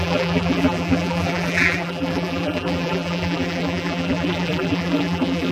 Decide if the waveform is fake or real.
fake